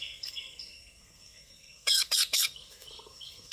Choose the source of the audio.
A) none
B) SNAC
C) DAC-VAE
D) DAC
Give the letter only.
B